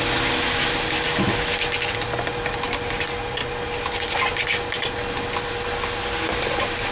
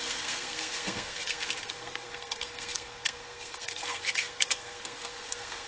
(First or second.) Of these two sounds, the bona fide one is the first